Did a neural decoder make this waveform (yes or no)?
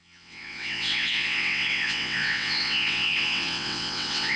yes